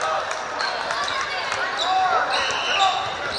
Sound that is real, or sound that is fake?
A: real